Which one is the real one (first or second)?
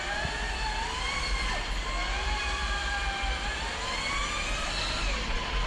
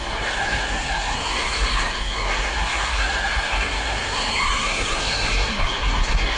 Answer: first